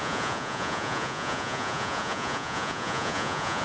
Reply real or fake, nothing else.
fake